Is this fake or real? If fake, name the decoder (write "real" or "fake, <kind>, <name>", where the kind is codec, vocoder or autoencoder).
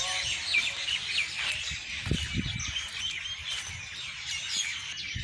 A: real